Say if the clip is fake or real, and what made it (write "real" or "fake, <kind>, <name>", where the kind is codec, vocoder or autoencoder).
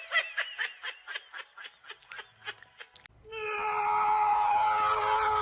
real